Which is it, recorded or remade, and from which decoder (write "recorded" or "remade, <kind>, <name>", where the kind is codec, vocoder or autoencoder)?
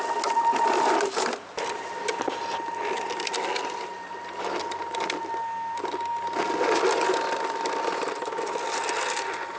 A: recorded